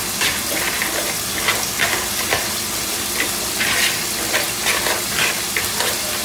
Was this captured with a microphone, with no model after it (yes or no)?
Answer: yes